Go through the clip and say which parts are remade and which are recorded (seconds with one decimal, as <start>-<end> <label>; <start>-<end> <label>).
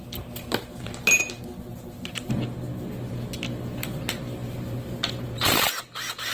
0.0-1.7 recorded; 1.7-2.3 remade; 2.3-4.4 recorded; 4.4-5.7 remade; 5.7-6.3 recorded